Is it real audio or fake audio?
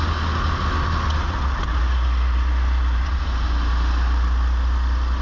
real